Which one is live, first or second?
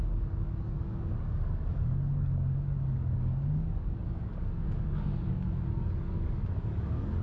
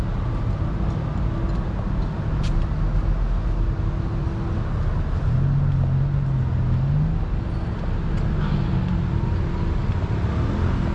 second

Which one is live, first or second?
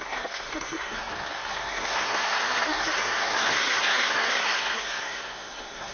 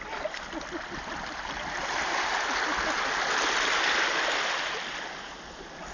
second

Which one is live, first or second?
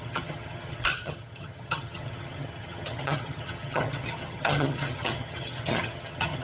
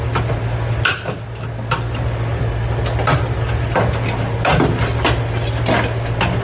second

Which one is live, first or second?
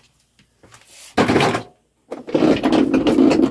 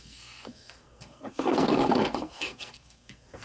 first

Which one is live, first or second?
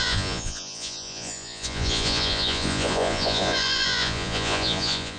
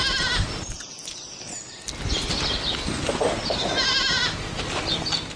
second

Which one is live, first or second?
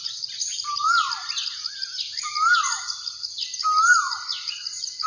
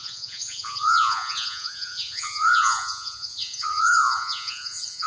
first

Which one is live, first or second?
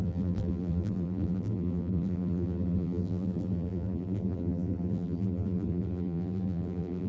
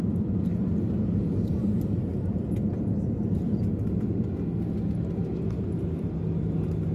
second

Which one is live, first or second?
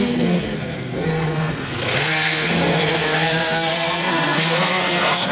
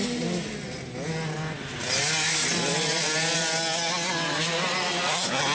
second